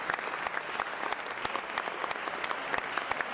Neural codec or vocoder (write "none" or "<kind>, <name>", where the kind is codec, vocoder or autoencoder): none